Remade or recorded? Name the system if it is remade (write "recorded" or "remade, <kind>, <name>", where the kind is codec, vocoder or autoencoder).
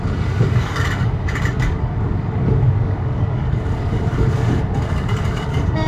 remade, codec, DAC